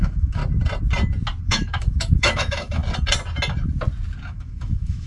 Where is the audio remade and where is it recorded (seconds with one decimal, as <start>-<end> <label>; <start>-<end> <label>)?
0.0-0.4 remade; 0.4-1.4 recorded; 1.4-2.8 remade; 2.8-4.3 recorded; 4.3-5.1 remade